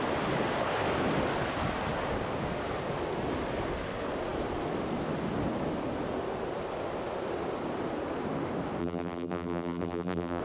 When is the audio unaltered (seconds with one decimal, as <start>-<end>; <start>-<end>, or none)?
0.0-8.8